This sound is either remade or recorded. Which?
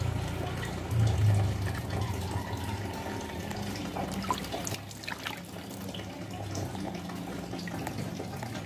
recorded